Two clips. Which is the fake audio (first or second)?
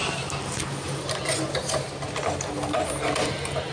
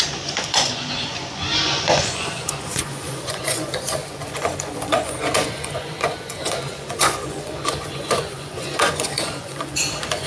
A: second